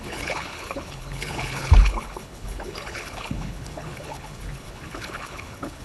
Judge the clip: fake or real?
fake